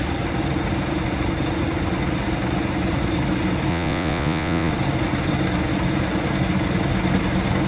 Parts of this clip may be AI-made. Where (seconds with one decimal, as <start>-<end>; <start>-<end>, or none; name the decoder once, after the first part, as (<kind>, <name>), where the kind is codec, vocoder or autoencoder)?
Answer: 3.7-4.7 (vocoder, Vocos)